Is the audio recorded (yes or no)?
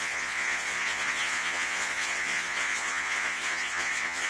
no